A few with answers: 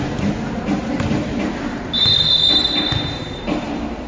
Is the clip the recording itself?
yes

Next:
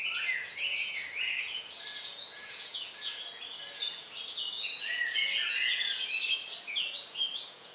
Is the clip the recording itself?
no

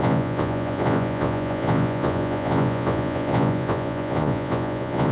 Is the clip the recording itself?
no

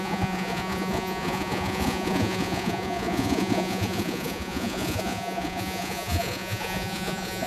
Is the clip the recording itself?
no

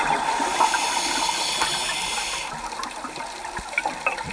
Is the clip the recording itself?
yes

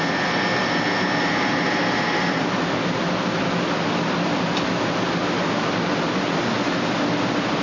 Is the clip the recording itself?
yes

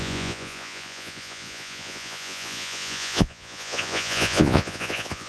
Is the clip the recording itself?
no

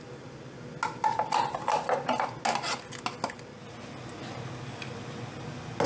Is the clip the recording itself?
yes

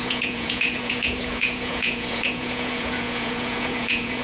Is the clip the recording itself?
no